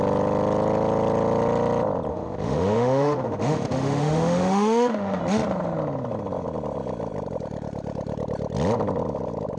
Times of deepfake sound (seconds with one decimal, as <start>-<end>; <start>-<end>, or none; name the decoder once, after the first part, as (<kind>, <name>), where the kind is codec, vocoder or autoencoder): 2.1-5.2 (autoencoder, DAC-VAE)